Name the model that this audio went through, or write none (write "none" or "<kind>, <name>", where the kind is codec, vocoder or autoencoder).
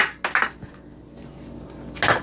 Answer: none